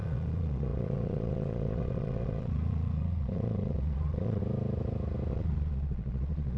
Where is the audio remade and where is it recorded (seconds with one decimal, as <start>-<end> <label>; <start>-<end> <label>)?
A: 0.0-4.4 remade; 4.4-5.3 recorded; 5.3-6.6 remade